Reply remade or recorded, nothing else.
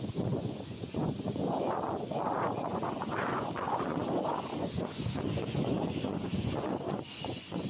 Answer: remade